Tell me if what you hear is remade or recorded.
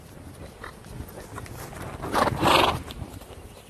recorded